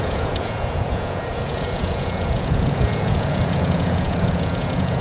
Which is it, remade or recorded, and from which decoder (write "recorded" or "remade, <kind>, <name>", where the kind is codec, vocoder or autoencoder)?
remade, vocoder, Vocos